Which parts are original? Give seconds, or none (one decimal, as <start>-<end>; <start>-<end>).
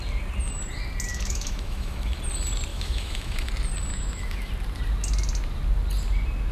0.0-1.1; 2.2-2.7; 3.5-3.9; 4.5-6.5